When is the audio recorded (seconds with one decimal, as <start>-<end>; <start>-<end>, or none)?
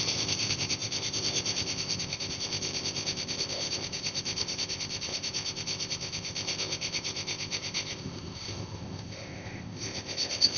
none